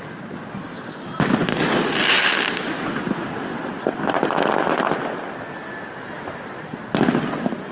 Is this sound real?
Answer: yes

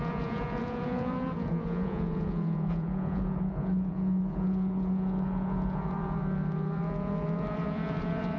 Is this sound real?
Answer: no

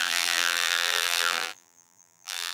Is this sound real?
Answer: no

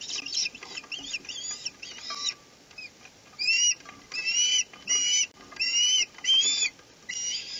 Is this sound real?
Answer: yes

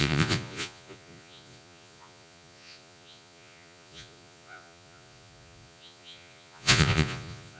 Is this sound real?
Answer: no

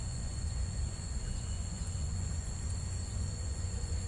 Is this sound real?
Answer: no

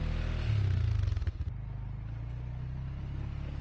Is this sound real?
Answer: yes